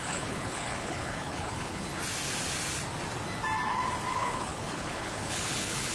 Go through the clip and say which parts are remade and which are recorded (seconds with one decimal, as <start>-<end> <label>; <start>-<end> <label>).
0.0-1.9 remade; 1.9-4.1 recorded; 4.1-5.9 remade

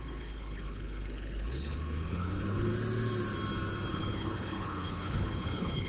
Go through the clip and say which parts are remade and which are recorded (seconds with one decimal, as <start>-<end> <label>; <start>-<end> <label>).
0.0-2.7 remade; 2.7-3.9 recorded; 3.9-5.9 remade

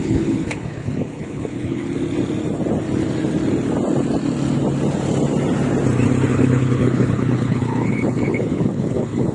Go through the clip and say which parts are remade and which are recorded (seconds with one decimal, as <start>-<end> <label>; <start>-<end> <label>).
0.0-1.8 remade; 1.8-6.3 recorded; 6.3-9.3 remade

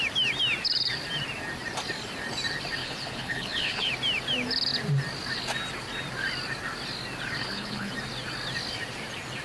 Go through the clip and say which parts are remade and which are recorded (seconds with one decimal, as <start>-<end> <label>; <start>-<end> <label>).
0.0-2.8 recorded; 2.8-3.9 remade; 3.9-7.4 recorded; 7.4-7.9 remade; 7.9-9.4 recorded